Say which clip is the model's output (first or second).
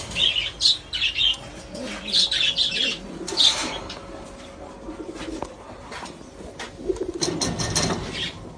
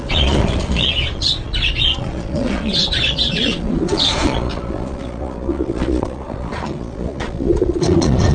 second